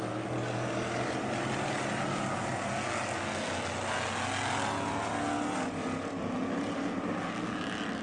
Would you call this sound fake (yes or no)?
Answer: no